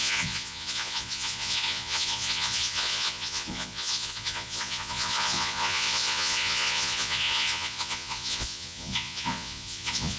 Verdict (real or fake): fake